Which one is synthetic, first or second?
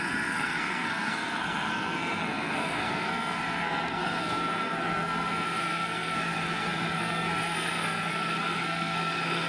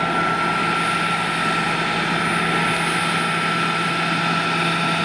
first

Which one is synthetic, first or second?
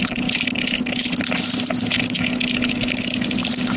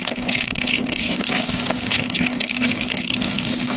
second